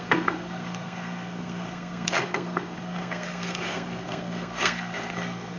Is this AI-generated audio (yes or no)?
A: yes